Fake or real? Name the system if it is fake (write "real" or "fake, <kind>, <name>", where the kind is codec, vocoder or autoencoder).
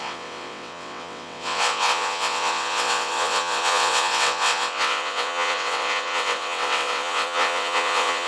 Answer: fake, vocoder, WaveNeXt